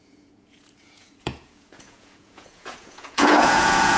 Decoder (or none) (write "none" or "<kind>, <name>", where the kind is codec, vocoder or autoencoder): vocoder, Vocos